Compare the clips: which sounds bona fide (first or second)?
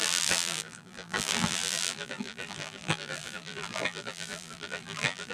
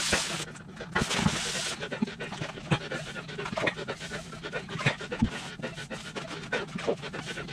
second